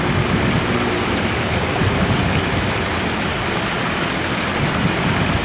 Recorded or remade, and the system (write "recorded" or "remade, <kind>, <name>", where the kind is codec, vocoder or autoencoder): recorded